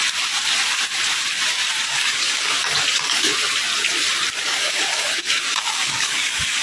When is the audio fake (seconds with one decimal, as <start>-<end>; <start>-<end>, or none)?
1.9-3.3; 4.4-6.6